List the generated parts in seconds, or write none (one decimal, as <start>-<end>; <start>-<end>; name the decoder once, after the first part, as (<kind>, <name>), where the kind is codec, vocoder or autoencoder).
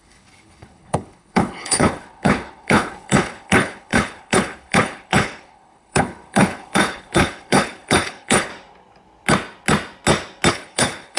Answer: 0.0-8.5 (codec, HILCodec); 10.5-11.2